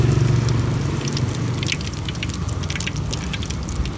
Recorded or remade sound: recorded